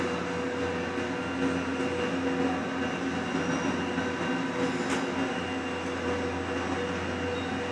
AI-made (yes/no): no